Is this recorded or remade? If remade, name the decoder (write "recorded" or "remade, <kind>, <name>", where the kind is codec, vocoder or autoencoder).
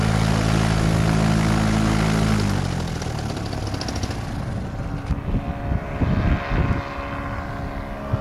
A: recorded